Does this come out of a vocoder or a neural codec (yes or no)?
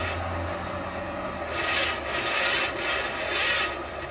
no